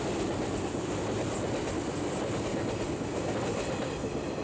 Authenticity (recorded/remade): recorded